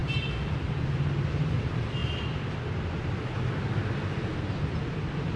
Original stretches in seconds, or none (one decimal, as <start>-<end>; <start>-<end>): 1.1-5.4

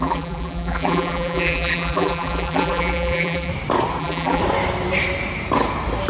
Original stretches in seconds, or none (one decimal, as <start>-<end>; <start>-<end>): 3.5-4.0; 4.4-6.1

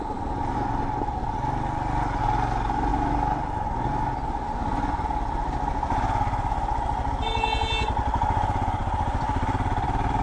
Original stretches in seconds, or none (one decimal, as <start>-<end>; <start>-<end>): 0.0-8.8

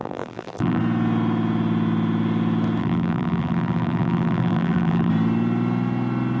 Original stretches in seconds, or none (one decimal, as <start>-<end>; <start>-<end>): 0.8-2.8; 5.1-6.4

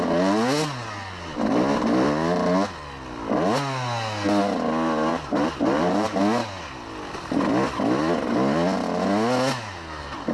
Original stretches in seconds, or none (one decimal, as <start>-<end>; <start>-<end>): 0.0-5.1; 6.2-10.3

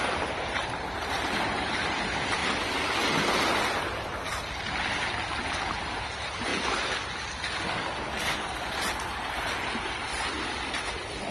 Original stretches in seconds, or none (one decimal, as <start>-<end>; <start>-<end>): 2.4-6.0; 6.5-8.4; 10.1-11.3